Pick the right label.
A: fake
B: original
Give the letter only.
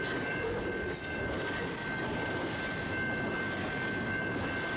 B